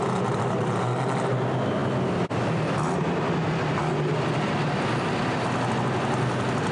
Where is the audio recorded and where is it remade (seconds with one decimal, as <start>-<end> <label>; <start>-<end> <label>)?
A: 0.0-6.7 recorded